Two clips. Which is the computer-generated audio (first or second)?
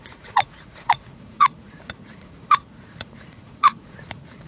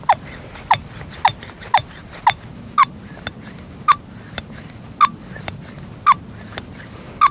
first